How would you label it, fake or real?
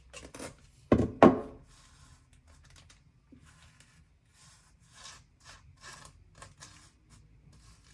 real